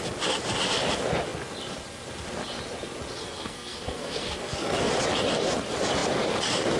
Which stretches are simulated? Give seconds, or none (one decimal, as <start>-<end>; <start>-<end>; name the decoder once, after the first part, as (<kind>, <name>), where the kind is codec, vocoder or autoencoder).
3.2-4.9 (codec, SNAC)